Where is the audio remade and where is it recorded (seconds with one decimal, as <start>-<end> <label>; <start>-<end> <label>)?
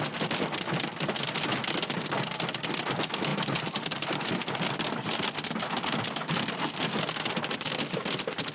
0.0-8.5 recorded